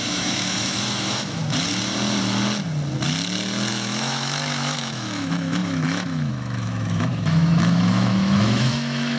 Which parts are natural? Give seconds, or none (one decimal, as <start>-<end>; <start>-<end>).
1.4-3.7

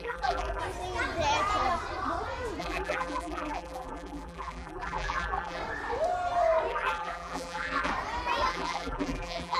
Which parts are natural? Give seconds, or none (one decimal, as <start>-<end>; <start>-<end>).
0.6-2.6; 5.6-6.7; 7.9-8.5